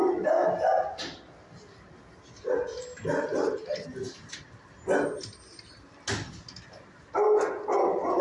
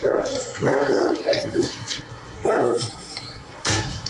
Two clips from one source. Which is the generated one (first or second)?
second